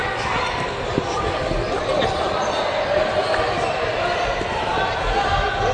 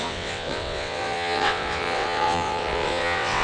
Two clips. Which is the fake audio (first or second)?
second